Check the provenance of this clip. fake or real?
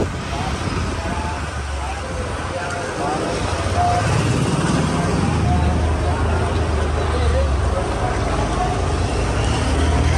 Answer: real